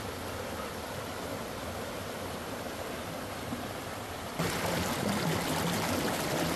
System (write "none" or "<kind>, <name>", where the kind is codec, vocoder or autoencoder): none